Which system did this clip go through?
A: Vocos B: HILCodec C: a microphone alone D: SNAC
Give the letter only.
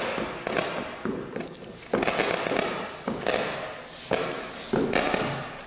C